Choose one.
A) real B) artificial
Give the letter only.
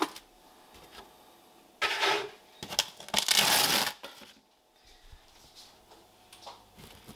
A